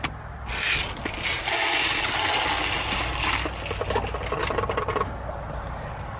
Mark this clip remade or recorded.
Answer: recorded